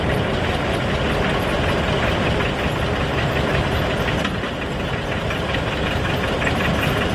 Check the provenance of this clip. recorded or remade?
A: recorded